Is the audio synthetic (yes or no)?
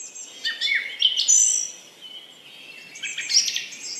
no